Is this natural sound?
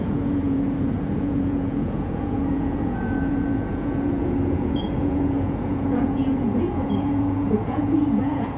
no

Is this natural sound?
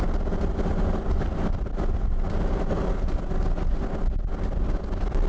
yes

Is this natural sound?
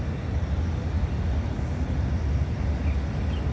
yes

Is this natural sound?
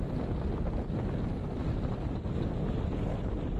yes